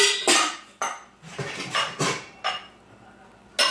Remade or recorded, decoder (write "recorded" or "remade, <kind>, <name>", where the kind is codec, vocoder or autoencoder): recorded